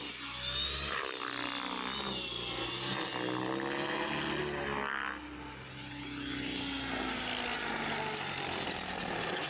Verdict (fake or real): real